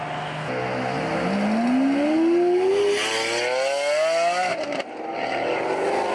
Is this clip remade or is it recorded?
recorded